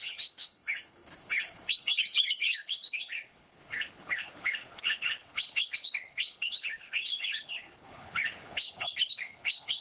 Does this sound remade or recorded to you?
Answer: remade